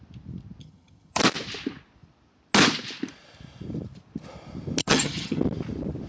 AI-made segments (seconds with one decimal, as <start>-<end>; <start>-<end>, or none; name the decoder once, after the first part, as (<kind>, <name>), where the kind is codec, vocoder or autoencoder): 0.6-1.2 (vocoder, HiFi-GAN); 4.8-5.4